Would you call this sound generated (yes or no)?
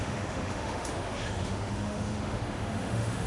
yes